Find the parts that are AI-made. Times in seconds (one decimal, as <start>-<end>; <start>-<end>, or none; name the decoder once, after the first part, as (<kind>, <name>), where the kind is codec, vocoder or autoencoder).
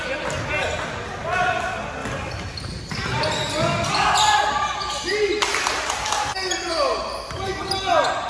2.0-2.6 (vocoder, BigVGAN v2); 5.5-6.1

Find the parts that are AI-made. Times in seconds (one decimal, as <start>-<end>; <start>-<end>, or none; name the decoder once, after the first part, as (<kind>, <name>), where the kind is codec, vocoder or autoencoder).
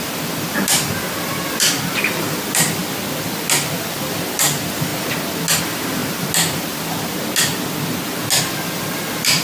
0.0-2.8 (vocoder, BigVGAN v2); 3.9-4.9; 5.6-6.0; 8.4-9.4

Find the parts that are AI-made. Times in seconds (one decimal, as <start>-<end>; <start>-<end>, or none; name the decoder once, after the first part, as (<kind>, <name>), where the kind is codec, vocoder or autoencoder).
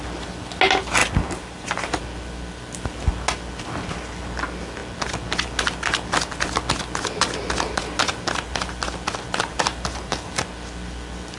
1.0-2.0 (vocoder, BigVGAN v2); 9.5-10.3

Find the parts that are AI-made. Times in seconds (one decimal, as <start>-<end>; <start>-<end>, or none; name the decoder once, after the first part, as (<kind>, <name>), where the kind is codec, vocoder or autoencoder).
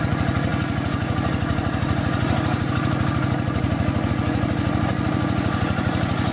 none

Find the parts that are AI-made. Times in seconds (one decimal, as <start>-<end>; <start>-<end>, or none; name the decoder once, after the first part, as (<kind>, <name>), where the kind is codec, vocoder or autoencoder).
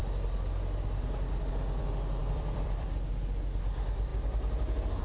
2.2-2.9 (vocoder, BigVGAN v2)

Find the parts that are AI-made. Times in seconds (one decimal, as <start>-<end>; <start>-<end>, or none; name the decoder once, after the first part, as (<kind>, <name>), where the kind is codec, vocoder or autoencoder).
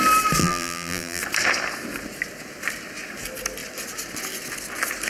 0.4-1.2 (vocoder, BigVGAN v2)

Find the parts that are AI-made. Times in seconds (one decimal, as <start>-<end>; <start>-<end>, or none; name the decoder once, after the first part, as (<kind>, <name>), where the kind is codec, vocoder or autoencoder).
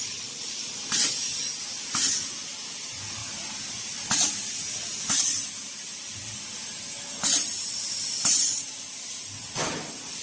3.2-4.5 (vocoder, BigVGAN v2); 5.2-6.2